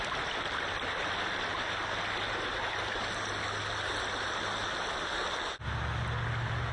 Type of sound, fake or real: real